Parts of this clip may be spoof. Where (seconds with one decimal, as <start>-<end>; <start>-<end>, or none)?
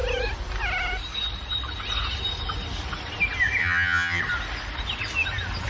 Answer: 3.6-4.2